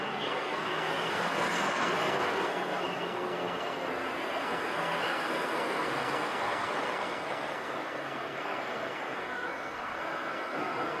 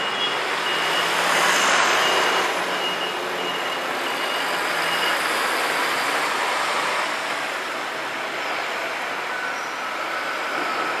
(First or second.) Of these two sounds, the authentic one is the second